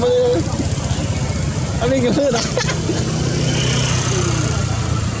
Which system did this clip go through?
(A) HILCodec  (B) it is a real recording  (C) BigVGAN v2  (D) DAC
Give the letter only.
B